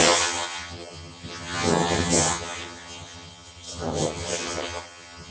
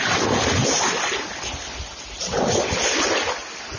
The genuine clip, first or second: second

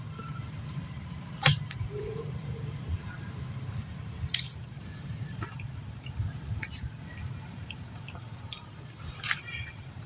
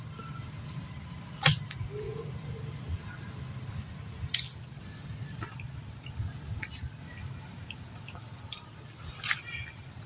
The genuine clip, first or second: second